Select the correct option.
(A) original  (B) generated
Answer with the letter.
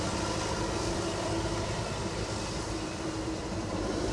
B